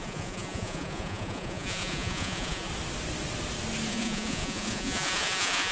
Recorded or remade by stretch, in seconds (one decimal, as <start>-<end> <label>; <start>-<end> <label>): 0.0-2.7 remade; 2.7-3.9 recorded; 3.9-5.7 remade

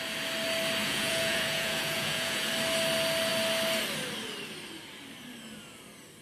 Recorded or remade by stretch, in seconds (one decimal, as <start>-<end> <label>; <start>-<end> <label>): 0.0-0.8 recorded; 0.8-2.5 remade; 2.5-6.2 recorded

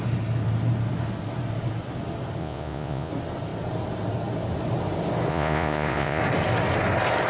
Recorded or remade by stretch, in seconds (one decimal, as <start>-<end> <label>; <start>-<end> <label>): 0.0-2.4 recorded; 2.4-3.1 remade; 3.1-5.3 recorded; 5.3-6.2 remade; 6.2-7.3 recorded

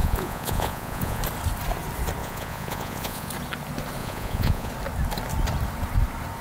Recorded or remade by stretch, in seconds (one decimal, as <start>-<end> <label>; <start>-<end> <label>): 0.0-1.2 remade; 1.2-2.2 recorded; 2.2-3.3 remade; 3.3-4.0 recorded; 4.0-4.7 remade; 4.7-6.4 recorded

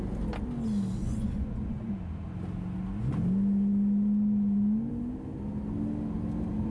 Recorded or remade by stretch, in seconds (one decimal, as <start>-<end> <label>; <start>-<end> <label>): 0.0-1.0 recorded; 1.0-1.9 remade; 1.9-6.7 recorded

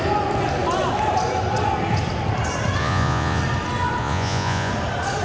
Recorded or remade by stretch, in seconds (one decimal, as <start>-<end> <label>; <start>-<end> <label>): 0.0-2.8 recorded; 2.8-3.4 remade; 3.4-4.0 recorded; 4.0-4.7 remade; 4.7-5.2 recorded